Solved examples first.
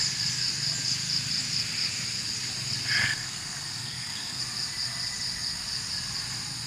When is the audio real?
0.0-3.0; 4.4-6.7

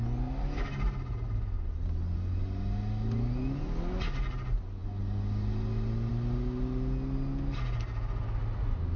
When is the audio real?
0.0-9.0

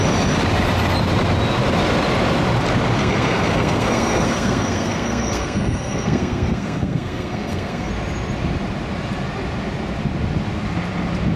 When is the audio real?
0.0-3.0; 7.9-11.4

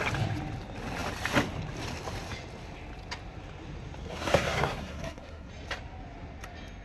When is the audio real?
0.0-4.0; 5.5-6.8

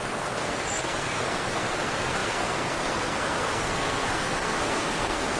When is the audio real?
none